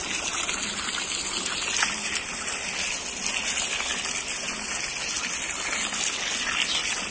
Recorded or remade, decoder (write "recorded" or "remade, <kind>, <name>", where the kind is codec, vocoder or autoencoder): recorded